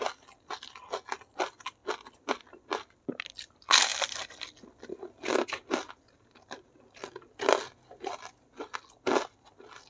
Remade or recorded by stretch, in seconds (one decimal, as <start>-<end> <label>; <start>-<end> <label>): 0.0-9.9 recorded